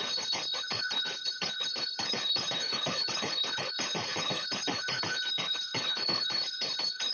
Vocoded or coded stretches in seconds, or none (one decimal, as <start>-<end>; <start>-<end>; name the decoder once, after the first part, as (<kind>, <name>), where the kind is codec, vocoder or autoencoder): 0.0-7.1 (codec, HILCodec)